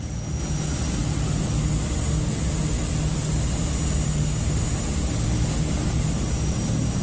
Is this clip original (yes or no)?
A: yes